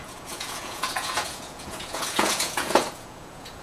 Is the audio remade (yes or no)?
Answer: yes